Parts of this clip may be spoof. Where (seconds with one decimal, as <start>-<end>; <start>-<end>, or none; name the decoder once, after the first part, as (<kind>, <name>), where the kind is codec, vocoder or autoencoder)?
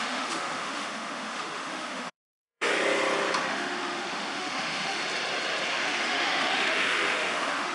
0.0-2.7 (autoencoder, DAC-VAE); 3.5-5.0; 5.7-7.7